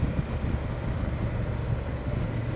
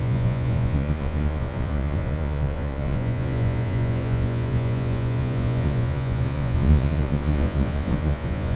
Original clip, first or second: first